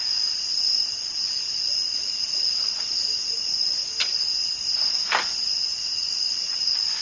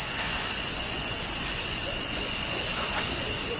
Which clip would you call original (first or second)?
first